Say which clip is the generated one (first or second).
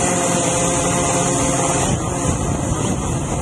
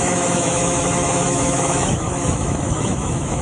second